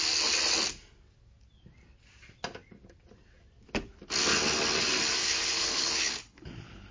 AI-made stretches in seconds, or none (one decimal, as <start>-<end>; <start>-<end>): 5.2-6.9